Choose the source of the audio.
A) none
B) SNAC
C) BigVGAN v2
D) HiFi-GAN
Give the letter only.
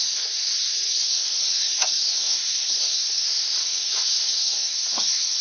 B